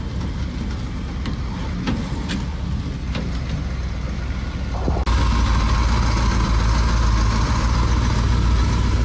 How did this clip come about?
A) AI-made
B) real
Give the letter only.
B